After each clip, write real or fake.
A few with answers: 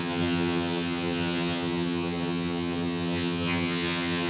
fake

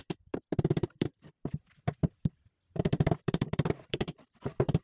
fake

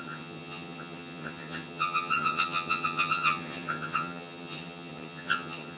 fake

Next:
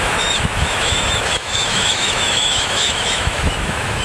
fake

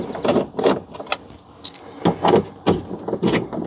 real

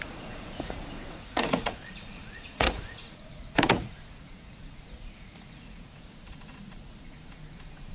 fake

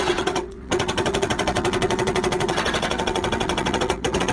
fake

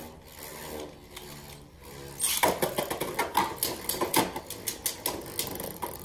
real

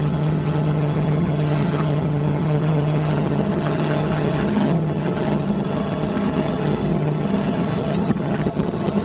fake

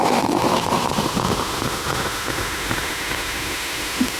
fake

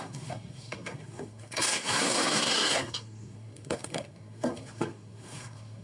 fake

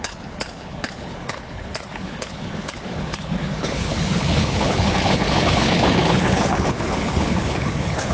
fake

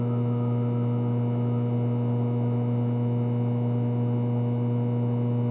real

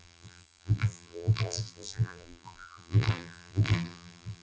fake